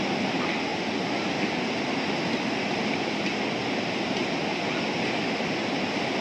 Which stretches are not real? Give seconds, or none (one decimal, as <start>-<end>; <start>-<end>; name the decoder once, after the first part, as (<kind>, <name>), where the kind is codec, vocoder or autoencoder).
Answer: none